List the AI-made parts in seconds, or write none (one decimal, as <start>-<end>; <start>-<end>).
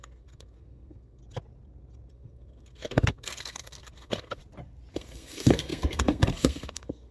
0.0-1.2; 2.1-4.4; 4.9-7.1